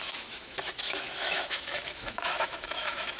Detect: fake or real fake